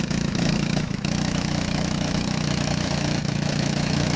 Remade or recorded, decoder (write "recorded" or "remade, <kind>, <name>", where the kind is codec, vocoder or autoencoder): remade, autoencoder, DAC-VAE